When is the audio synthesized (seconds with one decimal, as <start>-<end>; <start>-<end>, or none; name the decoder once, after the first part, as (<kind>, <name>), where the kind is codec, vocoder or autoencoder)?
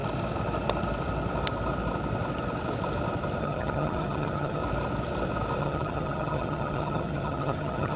3.4-4.6 (vocoder, HiFi-GAN); 5.6-8.0